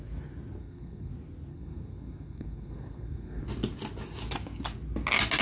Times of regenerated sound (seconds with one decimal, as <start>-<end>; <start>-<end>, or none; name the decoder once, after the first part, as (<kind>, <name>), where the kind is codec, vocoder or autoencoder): 0.6-1.1 (codec, SNAC); 1.5-3.4